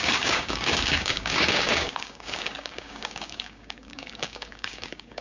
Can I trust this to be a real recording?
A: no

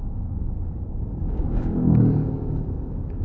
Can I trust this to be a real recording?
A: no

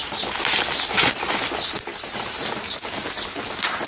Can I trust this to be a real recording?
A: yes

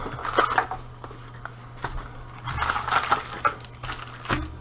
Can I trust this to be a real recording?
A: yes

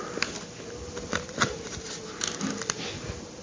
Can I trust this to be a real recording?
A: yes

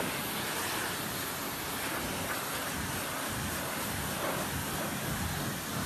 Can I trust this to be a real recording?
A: yes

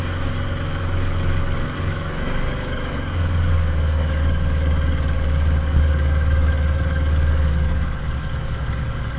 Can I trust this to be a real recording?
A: no